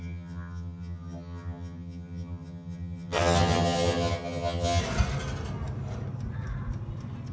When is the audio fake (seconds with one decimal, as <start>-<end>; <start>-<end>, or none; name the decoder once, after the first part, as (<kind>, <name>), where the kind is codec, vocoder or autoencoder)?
0.0-4.8 (vocoder, HiFi-GAN)